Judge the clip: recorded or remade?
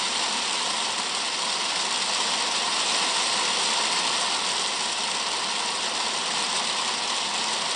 recorded